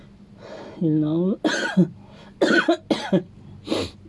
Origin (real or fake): real